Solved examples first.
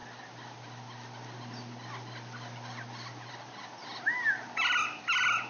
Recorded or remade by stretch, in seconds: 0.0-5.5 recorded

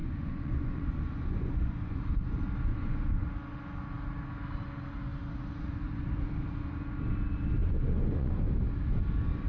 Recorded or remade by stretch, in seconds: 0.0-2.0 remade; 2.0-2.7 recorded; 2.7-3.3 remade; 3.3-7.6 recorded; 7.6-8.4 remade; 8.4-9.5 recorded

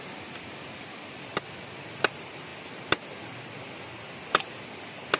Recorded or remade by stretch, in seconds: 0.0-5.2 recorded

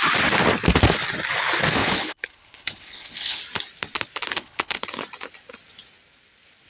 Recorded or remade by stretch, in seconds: 0.0-1.8 recorded; 1.8-3.4 remade; 3.4-4.3 recorded; 4.3-4.8 remade; 4.8-6.7 recorded

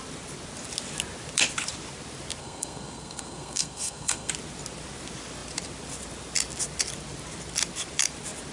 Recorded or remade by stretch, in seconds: 0.0-2.4 recorded; 2.4-4.3 remade; 4.3-8.5 recorded